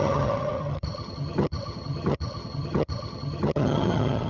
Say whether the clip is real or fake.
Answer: fake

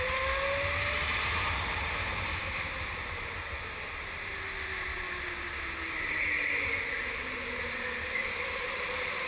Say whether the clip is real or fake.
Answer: real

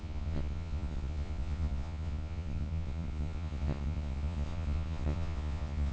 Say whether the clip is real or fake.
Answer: fake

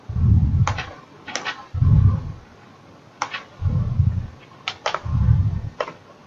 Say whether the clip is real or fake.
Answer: real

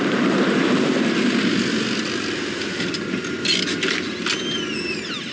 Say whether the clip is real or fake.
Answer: real